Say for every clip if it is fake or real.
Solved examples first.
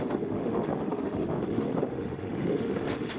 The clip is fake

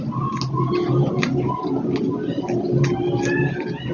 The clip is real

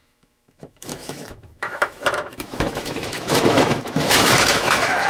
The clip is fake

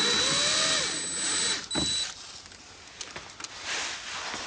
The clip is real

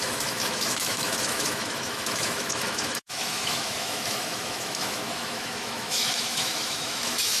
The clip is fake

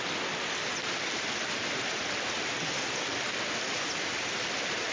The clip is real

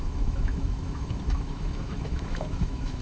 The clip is fake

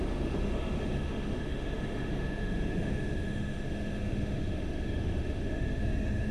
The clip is fake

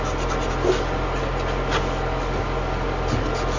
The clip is real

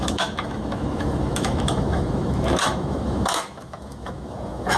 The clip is fake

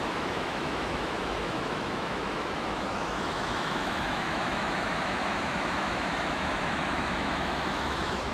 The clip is fake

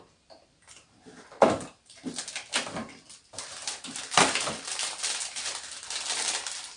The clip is real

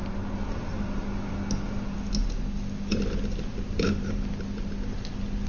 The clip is real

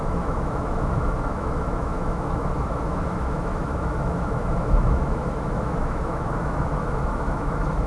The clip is fake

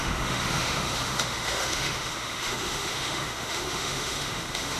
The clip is fake